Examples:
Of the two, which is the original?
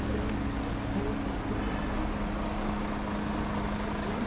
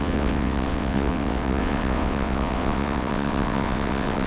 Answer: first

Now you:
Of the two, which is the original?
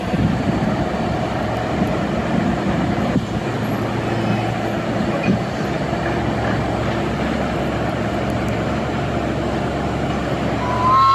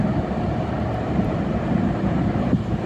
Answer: first